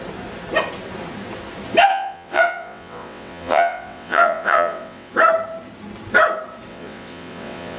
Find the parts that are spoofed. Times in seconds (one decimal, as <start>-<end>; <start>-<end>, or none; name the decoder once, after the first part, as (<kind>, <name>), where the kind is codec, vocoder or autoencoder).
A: 1.9-5.1 (vocoder, WaveNeXt); 6.7-7.8